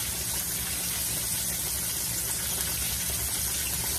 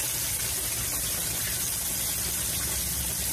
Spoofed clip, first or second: second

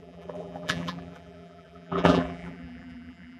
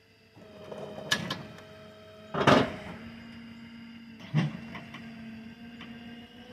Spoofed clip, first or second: first